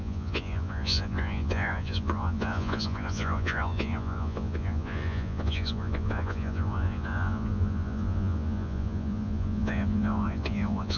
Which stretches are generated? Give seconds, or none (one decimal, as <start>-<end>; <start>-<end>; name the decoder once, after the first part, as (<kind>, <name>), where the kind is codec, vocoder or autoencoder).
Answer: 0.0-11.0 (vocoder, Vocos)

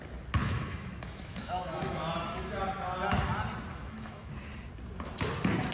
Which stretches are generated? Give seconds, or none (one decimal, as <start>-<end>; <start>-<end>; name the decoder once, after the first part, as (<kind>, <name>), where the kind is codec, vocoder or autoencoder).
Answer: 0.4-2.6 (autoencoder, DAC-VAE); 3.7-4.3

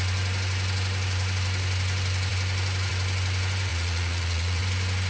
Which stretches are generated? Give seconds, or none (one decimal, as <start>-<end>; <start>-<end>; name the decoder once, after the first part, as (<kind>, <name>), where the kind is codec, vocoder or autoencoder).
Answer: 3.7-4.6 (vocoder, Vocos)